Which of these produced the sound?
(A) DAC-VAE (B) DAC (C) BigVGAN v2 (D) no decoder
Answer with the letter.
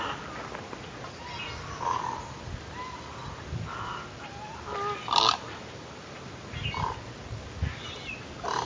D